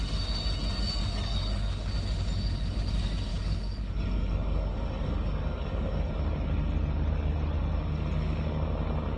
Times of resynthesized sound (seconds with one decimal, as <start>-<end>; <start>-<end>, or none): 1.0-1.9; 3.3-6.1